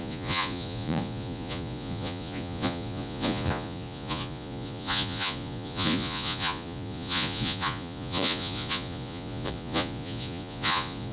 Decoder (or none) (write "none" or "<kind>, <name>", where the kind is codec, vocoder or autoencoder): vocoder, Vocos